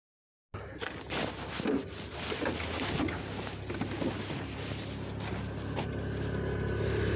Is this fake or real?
real